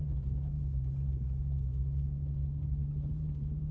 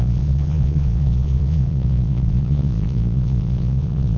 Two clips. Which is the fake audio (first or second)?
second